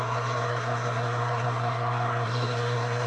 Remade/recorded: remade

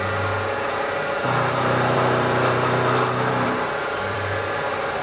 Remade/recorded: remade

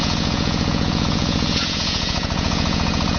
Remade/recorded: remade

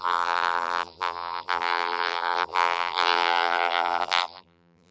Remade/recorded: remade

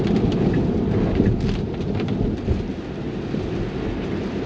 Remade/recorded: recorded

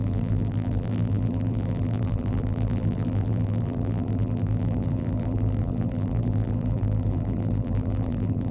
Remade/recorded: remade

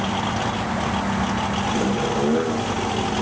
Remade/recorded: recorded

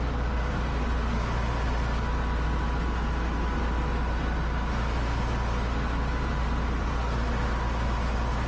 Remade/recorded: recorded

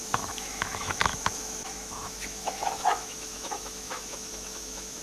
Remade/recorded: remade